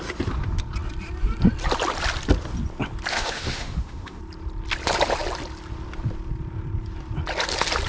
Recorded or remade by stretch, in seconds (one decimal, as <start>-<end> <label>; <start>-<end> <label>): 0.0-3.1 recorded; 3.1-4.2 remade; 4.2-7.9 recorded